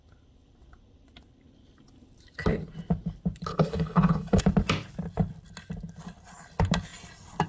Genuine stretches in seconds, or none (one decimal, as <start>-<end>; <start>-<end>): 0.0-3.5; 4.4-7.5